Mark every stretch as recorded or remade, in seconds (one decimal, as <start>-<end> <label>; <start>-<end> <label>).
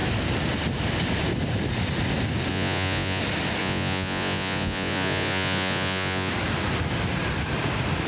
0.0-2.5 recorded; 2.5-3.2 remade; 3.2-3.6 recorded; 3.6-6.3 remade; 6.3-8.1 recorded